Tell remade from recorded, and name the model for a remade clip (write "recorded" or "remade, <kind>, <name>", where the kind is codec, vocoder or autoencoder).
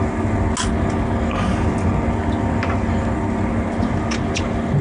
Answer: recorded